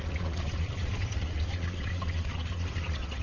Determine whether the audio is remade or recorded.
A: remade